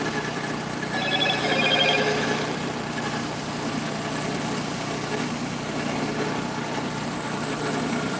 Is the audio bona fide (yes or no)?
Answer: yes